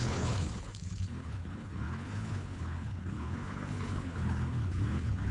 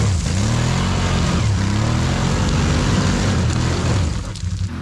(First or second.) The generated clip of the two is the first